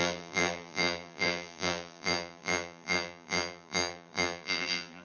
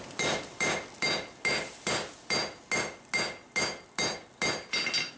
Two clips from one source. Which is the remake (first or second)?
first